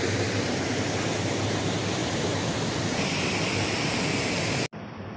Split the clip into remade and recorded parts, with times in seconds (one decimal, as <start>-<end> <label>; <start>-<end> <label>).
0.0-5.2 recorded